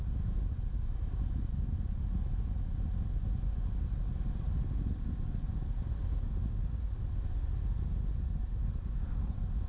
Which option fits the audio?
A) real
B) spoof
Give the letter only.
A